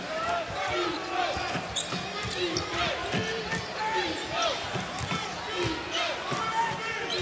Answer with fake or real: real